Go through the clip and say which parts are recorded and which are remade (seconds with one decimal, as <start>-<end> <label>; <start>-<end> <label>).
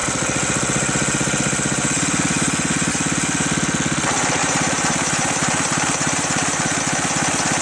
0.0-4.4 recorded; 4.4-6.8 remade; 6.8-7.6 recorded